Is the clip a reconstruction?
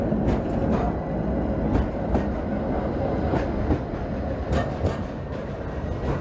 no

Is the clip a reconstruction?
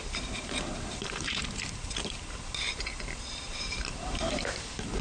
yes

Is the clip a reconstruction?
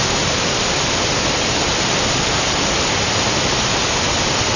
no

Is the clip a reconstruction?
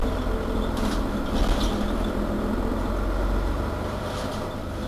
no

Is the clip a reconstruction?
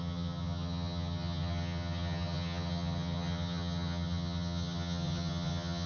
yes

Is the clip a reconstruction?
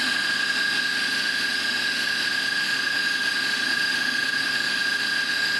yes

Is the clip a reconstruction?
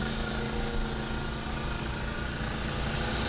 no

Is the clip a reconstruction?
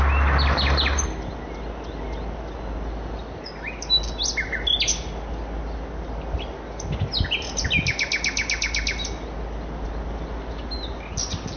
no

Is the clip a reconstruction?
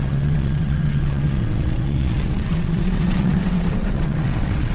yes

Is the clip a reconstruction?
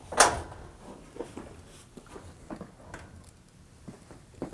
no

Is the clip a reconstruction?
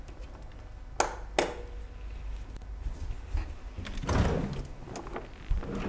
no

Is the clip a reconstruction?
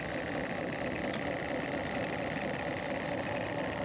no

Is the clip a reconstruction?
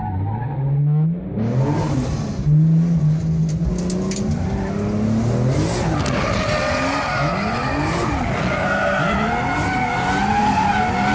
no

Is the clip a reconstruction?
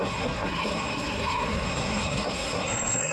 yes